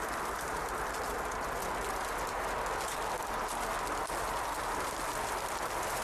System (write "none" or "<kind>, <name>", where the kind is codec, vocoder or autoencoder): none